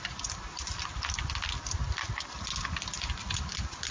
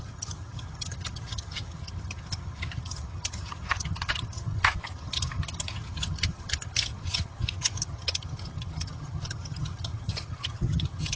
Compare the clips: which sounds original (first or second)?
first